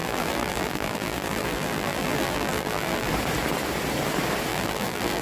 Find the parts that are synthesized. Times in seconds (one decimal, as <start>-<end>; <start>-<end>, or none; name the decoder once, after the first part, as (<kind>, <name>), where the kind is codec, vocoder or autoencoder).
0.0-3.1 (vocoder, BigVGAN v2); 4.5-5.2